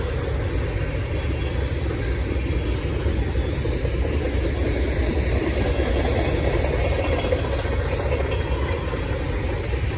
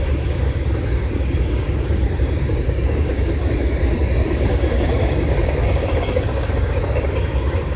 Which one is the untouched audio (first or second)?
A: first